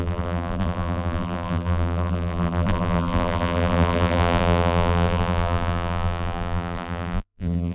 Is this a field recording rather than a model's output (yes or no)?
no